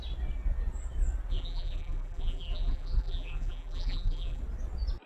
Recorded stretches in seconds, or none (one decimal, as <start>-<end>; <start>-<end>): 0.0-1.3; 4.4-5.1

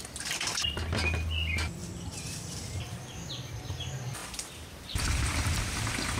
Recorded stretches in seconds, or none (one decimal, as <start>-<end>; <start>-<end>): 0.0-1.8; 2.8-4.2; 5.6-6.2